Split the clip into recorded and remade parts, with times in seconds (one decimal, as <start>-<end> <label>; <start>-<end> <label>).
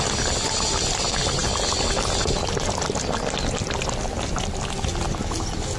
0.0-5.8 recorded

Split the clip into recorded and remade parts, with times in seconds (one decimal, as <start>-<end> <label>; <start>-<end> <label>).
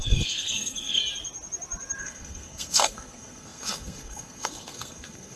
0.0-1.0 remade; 1.0-2.0 recorded; 2.0-5.4 remade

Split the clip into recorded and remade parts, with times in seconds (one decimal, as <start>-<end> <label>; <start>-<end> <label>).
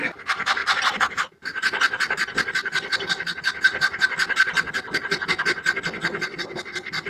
0.0-0.6 recorded; 0.6-1.3 remade; 1.3-7.1 recorded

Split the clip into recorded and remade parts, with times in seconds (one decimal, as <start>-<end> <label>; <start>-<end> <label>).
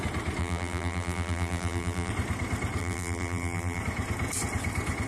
0.0-0.4 recorded; 0.4-2.1 remade; 2.1-2.8 recorded; 2.8-3.8 remade; 3.8-5.1 recorded